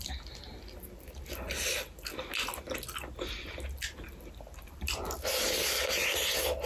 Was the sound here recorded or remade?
recorded